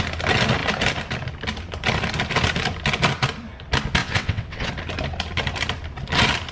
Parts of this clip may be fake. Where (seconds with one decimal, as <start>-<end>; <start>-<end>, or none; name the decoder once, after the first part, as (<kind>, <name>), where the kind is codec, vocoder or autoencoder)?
4.0-4.7 (vocoder, WaveNeXt)